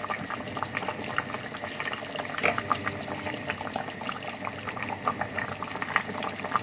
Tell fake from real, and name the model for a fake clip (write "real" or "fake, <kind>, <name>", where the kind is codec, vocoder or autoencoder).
real